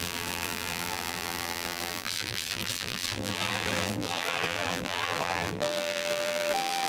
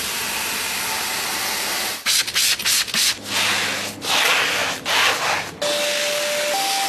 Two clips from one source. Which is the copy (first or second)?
first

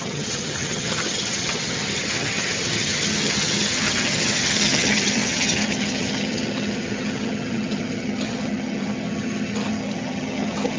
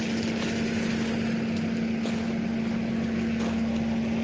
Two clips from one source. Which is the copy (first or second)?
first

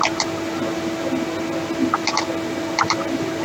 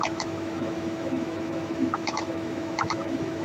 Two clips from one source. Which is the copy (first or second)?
second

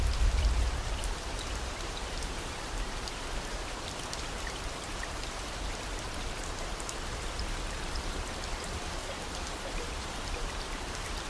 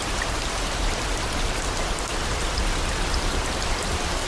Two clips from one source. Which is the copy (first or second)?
first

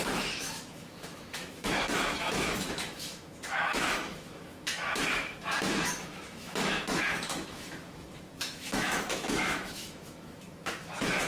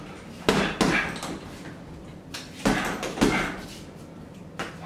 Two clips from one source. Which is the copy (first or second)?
first